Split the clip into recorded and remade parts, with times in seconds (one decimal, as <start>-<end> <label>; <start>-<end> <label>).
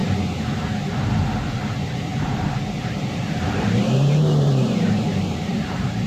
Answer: 0.0-0.5 recorded; 0.5-6.1 remade